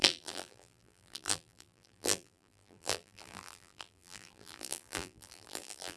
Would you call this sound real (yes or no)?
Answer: no